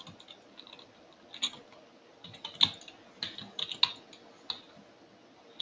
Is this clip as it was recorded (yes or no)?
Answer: yes